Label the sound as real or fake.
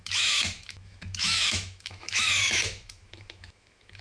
fake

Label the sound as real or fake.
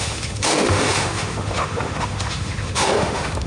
fake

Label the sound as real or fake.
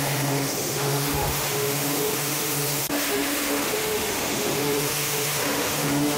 fake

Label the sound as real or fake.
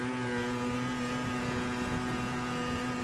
real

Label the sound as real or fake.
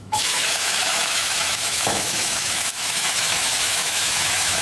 fake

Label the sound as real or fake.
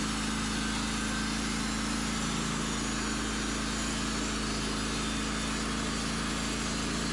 real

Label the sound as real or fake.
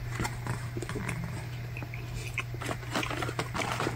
real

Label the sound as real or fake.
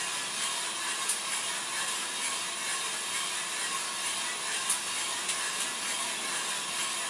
real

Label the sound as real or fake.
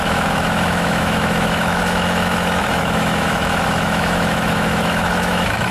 fake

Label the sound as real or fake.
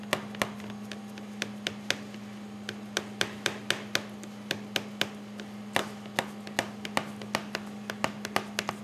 real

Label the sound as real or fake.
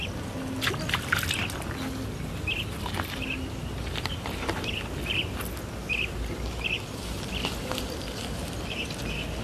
real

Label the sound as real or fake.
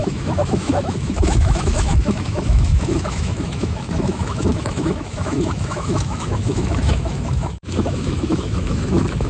fake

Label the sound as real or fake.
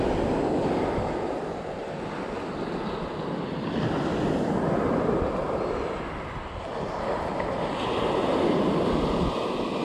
real